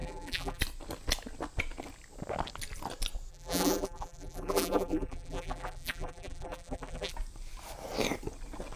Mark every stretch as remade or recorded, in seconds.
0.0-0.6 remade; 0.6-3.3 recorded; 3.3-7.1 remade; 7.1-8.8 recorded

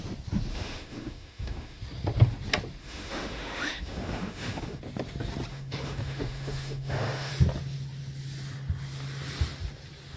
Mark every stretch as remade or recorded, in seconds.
0.0-0.5 recorded; 0.5-1.8 remade; 1.8-2.8 recorded; 2.8-4.8 remade; 4.8-5.5 recorded; 5.5-7.3 remade; 7.3-10.2 recorded

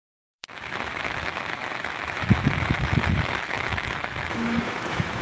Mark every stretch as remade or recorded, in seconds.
0.0-5.2 remade

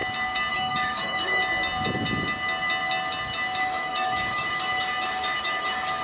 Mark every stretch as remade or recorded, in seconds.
0.0-0.5 recorded; 0.5-1.4 remade; 1.4-3.6 recorded; 3.6-6.0 remade

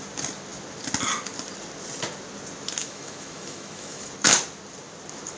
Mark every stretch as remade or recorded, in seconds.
0.0-2.8 recorded; 2.8-4.1 remade; 4.1-5.4 recorded